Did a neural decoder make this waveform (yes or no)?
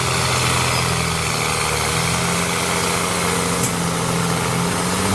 no